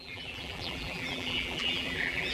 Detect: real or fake fake